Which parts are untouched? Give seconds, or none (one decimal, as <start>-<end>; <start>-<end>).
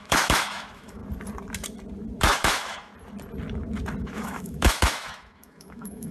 1.0-2.2; 2.9-4.0